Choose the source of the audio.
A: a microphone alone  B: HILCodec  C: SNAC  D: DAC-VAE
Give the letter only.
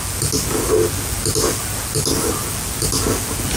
A